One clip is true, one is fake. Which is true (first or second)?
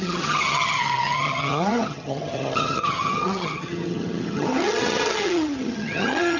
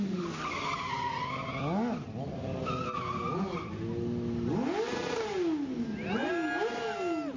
second